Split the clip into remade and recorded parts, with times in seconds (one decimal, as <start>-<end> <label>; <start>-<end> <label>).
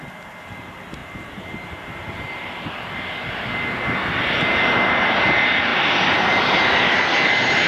0.0-7.7 recorded